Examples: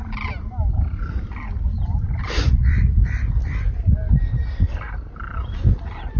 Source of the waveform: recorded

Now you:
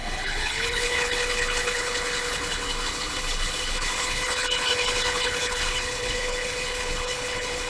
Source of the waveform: remade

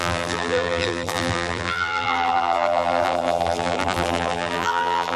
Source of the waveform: remade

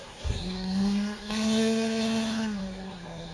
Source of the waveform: remade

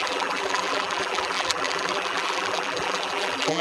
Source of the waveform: remade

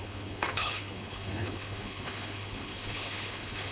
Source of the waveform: remade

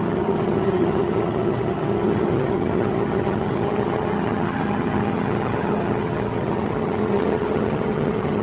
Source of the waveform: remade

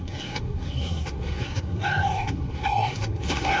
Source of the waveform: remade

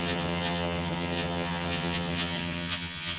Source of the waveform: remade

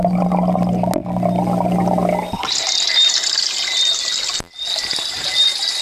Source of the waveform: recorded